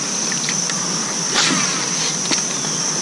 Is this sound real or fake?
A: real